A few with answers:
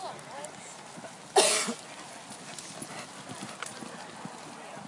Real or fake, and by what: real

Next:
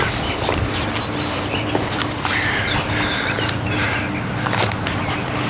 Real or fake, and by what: real